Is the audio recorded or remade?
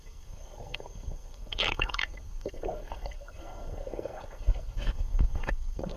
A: remade